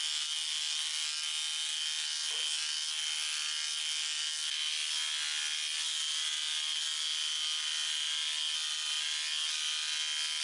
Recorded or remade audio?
recorded